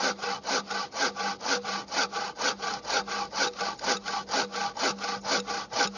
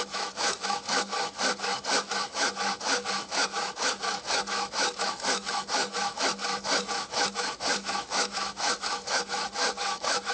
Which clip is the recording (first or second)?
first